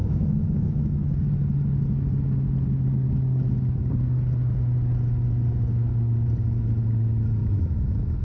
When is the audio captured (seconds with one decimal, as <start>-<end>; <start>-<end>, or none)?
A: 1.1-7.4